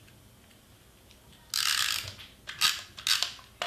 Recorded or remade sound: recorded